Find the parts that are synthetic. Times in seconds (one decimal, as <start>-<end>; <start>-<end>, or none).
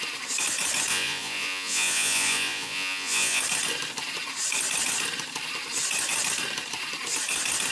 0.9-3.4